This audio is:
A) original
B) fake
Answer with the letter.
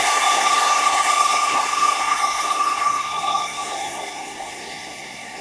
B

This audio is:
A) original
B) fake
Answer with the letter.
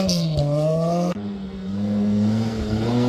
B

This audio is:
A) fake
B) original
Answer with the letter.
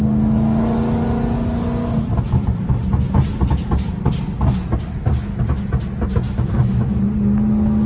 B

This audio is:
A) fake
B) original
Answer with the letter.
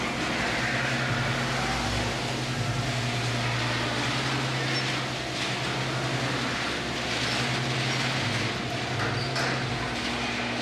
B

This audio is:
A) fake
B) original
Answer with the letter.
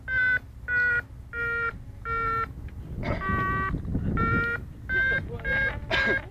B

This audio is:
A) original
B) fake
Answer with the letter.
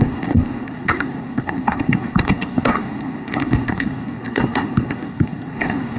B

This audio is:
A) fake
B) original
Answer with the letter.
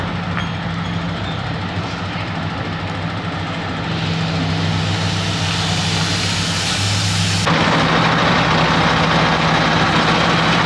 B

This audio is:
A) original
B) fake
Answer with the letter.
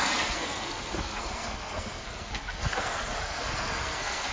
B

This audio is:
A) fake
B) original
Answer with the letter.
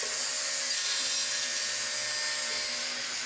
B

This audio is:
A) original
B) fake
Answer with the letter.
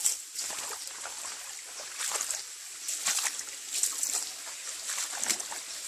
A